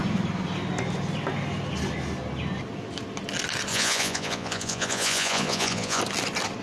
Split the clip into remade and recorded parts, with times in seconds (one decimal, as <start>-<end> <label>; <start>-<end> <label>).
0.0-3.7 recorded; 3.7-6.0 remade; 6.0-6.6 recorded